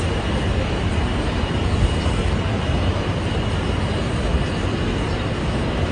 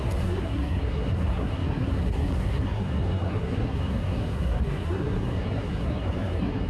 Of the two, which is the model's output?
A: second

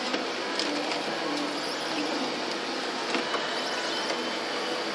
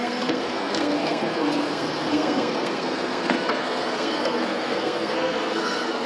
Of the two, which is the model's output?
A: second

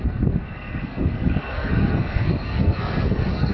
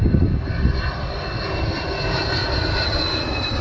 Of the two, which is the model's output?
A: first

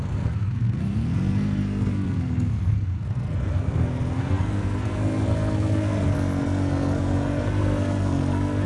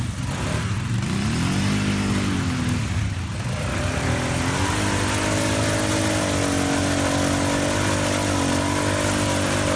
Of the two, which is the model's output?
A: first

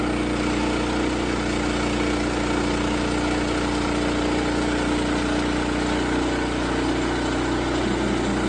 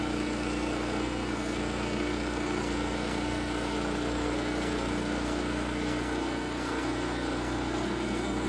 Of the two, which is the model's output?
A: second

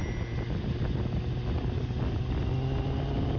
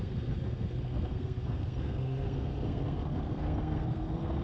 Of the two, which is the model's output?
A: second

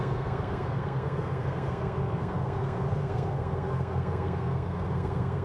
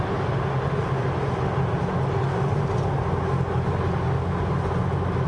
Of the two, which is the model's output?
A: first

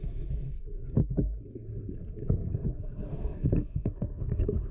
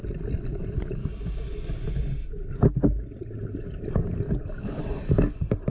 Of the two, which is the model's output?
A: first